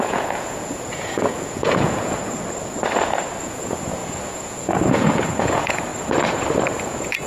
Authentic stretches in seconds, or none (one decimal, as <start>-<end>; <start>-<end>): 2.2-3.4; 5.9-6.7